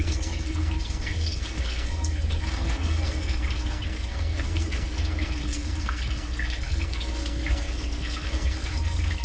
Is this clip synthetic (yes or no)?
yes